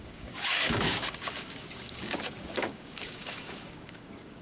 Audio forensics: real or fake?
fake